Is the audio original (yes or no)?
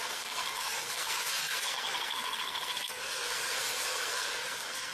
no